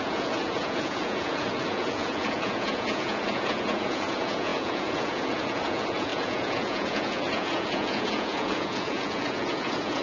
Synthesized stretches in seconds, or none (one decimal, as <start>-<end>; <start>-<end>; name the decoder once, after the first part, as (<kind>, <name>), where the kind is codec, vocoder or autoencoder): 0.0-10.0 (vocoder, Vocos)

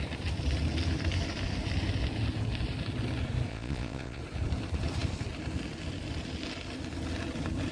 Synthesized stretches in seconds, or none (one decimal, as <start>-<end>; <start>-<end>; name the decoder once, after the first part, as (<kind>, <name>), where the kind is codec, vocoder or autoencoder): 3.5-4.2 (vocoder, Vocos)

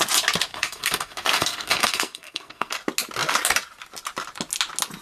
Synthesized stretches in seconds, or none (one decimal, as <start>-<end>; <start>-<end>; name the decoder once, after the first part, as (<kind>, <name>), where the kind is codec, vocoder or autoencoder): 0.5-2.7 (codec, SNAC)

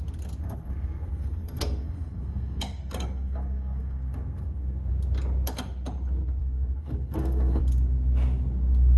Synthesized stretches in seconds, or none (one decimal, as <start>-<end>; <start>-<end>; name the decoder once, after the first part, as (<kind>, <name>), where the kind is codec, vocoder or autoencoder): 0.4-4.9 (codec, SNAC); 6.4-7.6